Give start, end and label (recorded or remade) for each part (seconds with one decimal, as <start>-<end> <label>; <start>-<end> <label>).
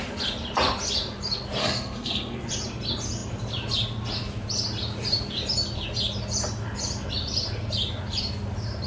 0.0-1.6 recorded; 1.6-2.5 remade; 2.5-8.9 recorded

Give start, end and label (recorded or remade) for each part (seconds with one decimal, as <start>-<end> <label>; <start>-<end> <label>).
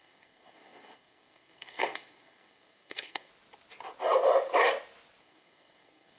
0.0-3.3 remade; 3.3-5.2 recorded; 5.2-6.2 remade